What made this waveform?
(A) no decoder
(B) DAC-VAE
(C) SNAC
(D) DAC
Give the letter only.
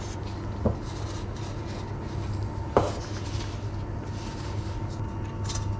A